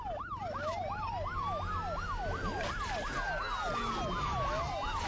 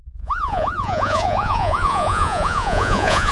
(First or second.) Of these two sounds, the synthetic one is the second